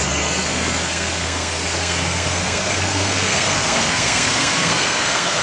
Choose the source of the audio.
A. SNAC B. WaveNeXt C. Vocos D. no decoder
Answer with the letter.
A